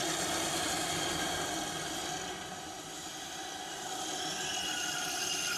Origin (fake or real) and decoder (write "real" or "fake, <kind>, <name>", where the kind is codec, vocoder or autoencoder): real